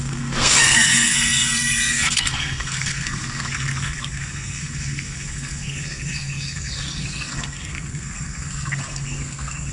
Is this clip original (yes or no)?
no